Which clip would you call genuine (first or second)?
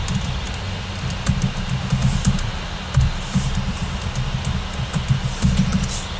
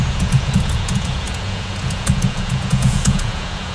first